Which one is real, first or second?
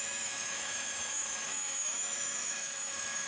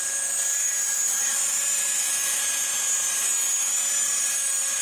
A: second